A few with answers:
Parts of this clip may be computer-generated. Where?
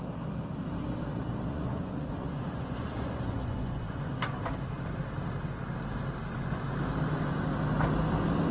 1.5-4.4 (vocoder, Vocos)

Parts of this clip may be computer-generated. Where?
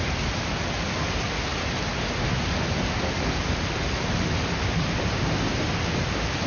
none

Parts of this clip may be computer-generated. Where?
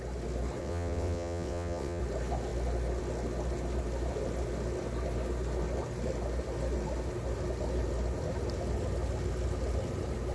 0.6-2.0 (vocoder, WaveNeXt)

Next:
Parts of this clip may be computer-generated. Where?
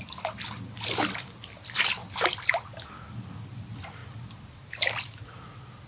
none